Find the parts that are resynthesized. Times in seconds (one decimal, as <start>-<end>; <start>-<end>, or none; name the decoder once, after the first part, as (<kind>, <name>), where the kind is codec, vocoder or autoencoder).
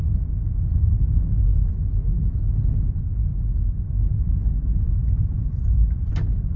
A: 5.0-6.1 (vocoder, BigVGAN v2)